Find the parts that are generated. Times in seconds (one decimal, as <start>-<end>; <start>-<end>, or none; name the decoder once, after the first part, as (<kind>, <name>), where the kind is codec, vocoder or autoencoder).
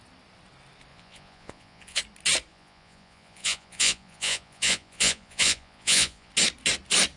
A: 0.9-2.0 (vocoder, Vocos); 2.5-6.3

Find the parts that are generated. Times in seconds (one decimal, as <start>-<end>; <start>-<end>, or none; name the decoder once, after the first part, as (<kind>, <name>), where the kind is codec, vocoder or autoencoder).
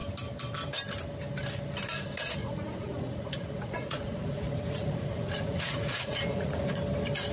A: 2.4-6.8 (vocoder, Vocos)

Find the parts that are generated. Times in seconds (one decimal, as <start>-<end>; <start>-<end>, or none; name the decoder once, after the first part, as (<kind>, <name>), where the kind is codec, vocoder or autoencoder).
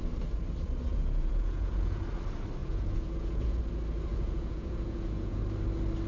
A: 0.9-2.0 (vocoder, Vocos); 2.6-3.6; 4.1-5.4